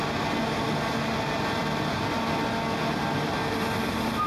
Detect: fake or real real